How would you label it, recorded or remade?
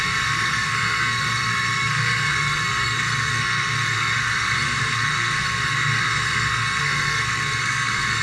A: remade